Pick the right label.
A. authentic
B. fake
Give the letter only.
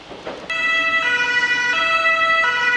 A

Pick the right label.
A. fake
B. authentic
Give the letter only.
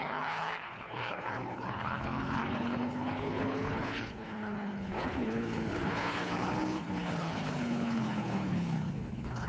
A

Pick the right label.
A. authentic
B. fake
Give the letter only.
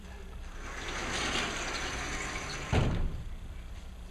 A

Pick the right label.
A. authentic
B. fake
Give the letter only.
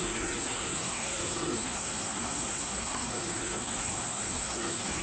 B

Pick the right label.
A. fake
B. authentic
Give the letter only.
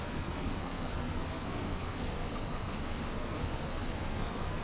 A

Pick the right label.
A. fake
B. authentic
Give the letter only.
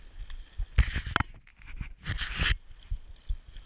B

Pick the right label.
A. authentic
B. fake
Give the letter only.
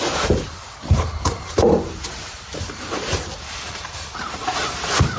B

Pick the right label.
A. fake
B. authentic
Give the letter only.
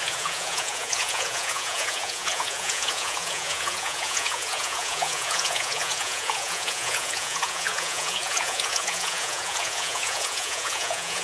A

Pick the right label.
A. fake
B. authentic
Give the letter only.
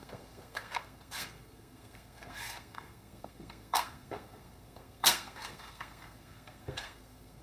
A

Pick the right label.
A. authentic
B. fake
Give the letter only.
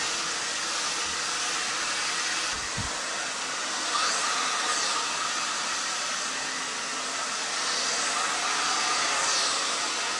A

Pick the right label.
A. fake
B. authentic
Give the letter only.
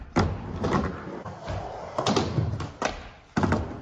B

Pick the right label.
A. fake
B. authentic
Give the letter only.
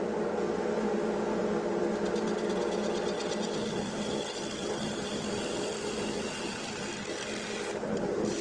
B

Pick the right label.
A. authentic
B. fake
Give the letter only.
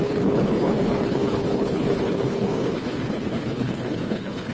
B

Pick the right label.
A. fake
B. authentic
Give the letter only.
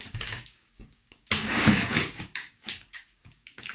A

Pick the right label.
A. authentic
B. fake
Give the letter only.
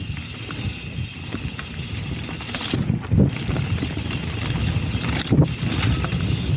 A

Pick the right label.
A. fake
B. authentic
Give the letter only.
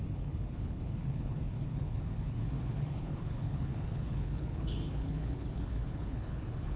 A